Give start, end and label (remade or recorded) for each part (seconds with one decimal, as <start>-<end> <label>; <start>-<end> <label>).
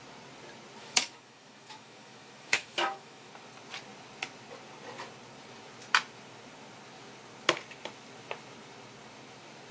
0.0-0.8 recorded; 0.8-3.3 remade; 3.3-9.7 recorded